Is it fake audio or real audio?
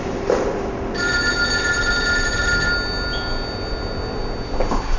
real